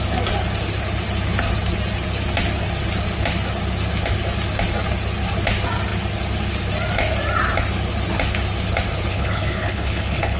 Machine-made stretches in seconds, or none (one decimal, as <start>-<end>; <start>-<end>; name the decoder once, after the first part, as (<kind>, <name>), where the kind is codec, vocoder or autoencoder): 9.1-10.4 (codec, HILCodec)